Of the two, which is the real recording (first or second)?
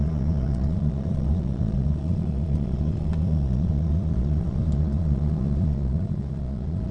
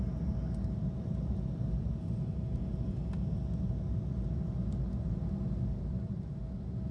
second